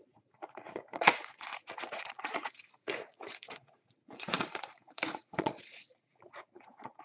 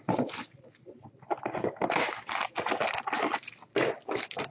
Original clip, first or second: second